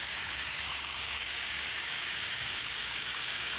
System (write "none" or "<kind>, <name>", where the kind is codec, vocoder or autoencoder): codec, DAC